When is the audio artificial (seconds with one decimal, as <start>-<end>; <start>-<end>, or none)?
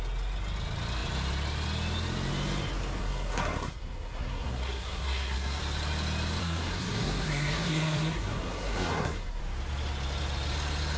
3.0-5.6; 6.4-9.4